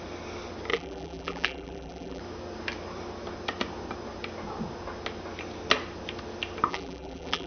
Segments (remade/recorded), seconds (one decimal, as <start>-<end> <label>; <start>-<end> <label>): 0.0-0.7 recorded; 0.7-2.2 remade; 2.2-6.7 recorded; 6.7-7.5 remade